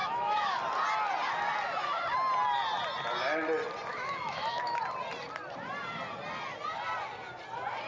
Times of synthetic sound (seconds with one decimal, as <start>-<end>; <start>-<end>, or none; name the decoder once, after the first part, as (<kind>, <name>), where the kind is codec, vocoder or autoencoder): 0.0-0.6 (autoencoder, DAC-VAE); 3.9-4.8